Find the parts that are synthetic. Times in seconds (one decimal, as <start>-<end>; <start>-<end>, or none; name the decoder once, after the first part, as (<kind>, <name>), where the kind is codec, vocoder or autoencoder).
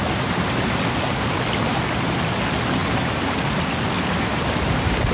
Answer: none